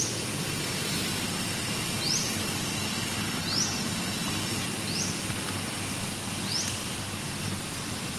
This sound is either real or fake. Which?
real